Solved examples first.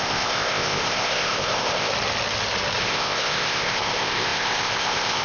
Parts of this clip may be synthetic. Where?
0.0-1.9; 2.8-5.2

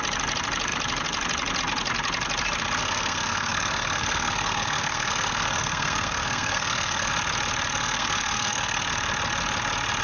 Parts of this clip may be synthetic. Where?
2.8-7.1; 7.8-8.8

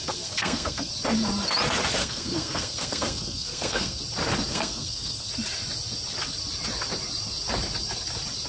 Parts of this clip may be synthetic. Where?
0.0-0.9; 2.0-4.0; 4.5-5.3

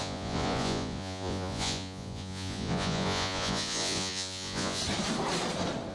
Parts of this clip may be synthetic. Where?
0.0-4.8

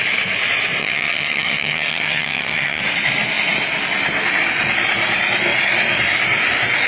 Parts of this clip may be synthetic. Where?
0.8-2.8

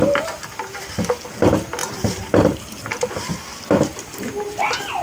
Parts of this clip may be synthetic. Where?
1.8-2.8; 3.5-4.6

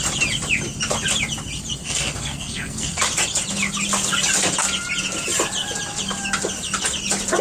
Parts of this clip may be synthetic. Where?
1.8-3.0

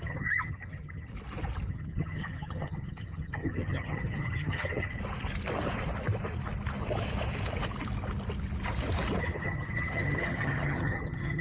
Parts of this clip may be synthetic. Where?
0.0-1.1; 1.7-5.0; 9.2-11.4